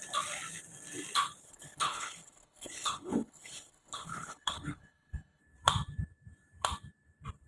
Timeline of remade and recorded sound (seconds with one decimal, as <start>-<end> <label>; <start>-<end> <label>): 0.0-1.4 recorded; 1.4-5.4 remade; 5.4-7.5 recorded